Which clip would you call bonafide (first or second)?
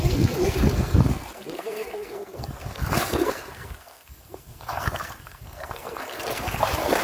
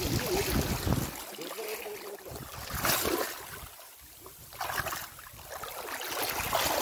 second